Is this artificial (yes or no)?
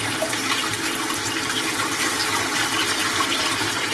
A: yes